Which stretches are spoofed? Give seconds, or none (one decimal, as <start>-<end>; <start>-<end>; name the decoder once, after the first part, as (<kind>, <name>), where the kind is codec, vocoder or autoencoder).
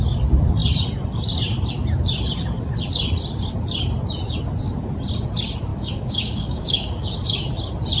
5.7-7.1 (codec, DAC)